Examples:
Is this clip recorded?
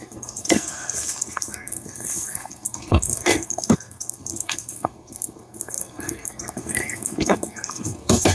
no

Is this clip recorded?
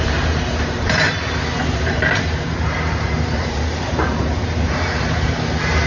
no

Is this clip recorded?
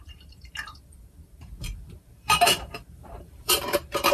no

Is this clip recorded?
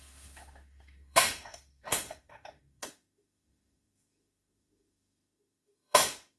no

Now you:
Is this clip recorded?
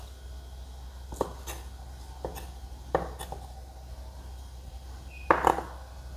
yes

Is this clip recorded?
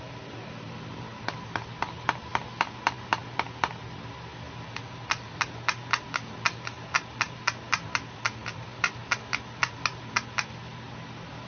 yes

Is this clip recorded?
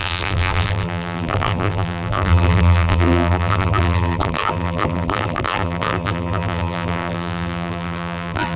no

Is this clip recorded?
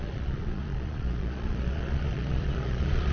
no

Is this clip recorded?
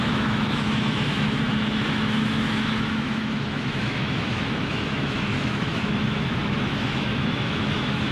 no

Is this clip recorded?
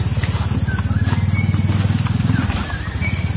yes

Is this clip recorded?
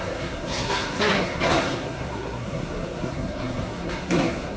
no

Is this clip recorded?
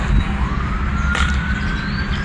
yes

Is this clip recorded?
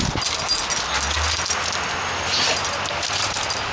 yes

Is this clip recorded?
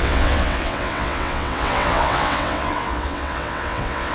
no